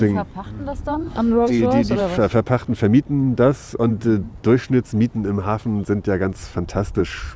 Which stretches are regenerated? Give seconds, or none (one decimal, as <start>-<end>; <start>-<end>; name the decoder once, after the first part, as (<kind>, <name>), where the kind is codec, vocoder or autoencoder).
0.9-1.6 (codec, SNAC)